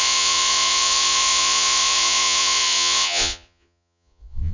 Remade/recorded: remade